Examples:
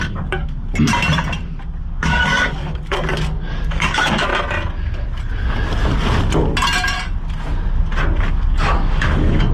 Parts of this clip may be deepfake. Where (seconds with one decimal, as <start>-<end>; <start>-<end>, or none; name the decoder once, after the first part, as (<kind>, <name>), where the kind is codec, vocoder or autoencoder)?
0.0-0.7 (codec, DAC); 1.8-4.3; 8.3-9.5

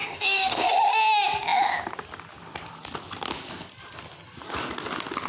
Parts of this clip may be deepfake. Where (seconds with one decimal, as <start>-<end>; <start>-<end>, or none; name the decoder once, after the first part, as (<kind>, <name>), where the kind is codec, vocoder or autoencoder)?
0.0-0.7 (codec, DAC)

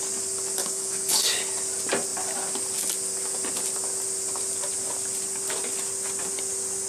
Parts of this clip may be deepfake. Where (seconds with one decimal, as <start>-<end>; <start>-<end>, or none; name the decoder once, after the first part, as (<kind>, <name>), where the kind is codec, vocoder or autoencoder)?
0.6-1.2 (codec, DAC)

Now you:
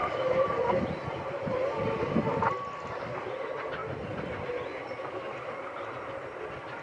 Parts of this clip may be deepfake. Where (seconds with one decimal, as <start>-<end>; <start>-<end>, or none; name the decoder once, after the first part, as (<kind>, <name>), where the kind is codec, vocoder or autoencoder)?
none

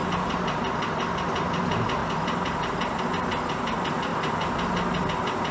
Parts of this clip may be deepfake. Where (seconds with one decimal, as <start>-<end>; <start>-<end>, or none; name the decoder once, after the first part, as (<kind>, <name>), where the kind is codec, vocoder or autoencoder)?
none